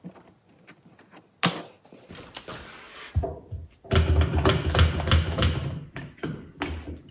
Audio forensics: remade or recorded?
recorded